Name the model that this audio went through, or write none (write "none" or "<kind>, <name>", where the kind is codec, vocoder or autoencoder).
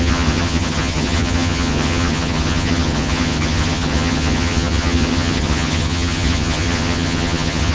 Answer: vocoder, HiFi-GAN